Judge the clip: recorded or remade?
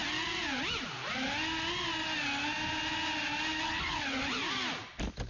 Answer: recorded